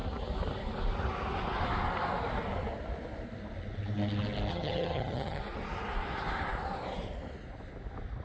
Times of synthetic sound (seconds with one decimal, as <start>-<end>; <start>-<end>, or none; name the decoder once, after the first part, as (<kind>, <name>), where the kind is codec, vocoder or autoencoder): 4.5-5.4 (vocoder, HiFi-GAN)